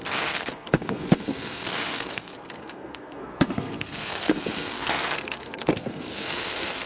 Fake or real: fake